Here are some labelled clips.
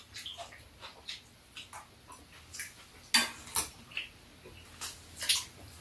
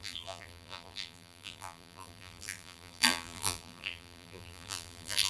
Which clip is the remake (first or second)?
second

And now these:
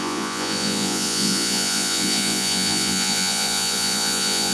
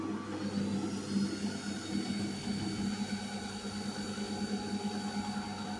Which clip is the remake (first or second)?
first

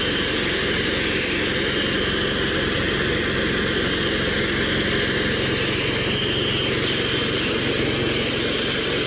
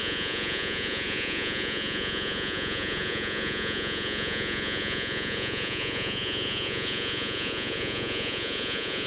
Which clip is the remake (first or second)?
second